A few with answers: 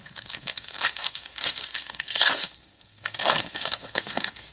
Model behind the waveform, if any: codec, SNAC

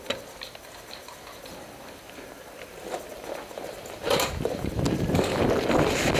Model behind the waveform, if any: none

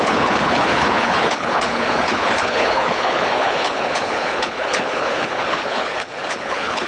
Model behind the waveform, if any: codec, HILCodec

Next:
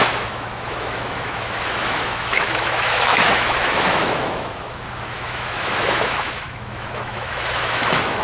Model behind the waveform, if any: autoencoder, DAC-VAE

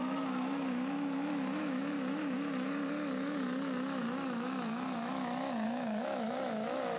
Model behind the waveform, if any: autoencoder, DAC-VAE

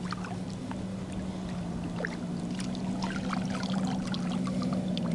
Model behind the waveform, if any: none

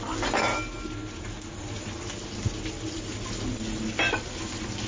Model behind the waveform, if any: none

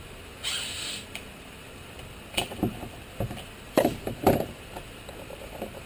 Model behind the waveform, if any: vocoder, BigVGAN v2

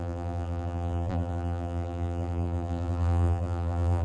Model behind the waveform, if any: vocoder, BigVGAN v2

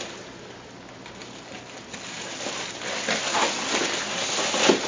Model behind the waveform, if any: none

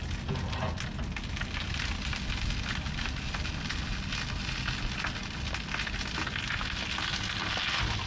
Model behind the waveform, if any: none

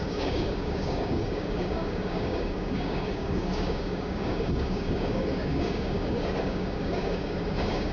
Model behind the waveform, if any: codec, DAC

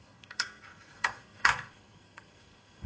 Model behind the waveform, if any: codec, SNAC